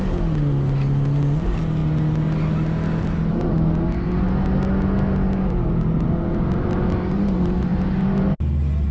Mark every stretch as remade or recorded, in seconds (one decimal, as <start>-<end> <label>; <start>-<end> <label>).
0.0-8.9 recorded